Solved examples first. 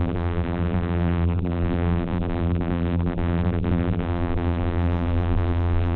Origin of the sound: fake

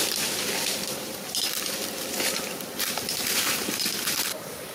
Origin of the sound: fake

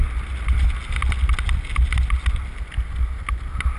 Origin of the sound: real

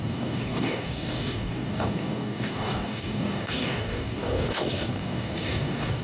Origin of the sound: fake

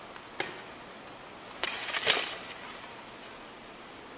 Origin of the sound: real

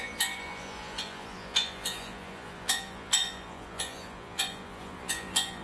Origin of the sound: fake